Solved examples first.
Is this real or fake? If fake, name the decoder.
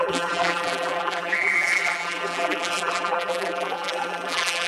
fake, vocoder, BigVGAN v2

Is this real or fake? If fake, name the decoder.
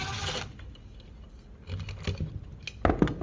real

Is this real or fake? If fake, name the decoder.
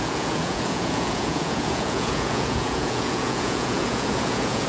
fake, vocoder, Vocos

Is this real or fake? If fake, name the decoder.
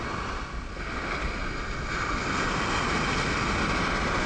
real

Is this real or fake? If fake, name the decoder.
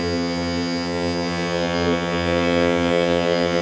fake, vocoder, HiFi-GAN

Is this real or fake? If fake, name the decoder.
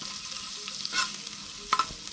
real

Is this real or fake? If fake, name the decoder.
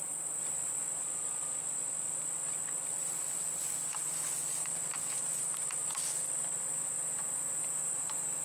real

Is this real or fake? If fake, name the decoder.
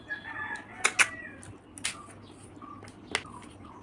real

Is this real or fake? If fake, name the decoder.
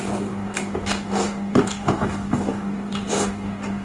fake, codec, DAC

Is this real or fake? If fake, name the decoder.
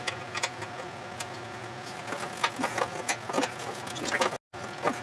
real